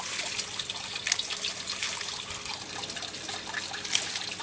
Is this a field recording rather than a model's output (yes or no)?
yes